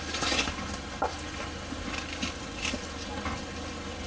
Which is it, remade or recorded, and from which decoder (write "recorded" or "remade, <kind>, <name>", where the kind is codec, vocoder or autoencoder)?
recorded